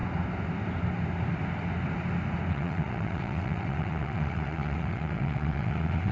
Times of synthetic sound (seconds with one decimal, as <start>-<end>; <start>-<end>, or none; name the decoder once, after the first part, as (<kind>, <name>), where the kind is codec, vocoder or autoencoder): 2.5-6.1 (vocoder, WaveNeXt)